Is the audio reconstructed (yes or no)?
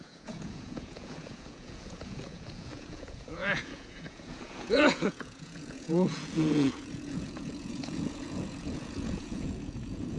yes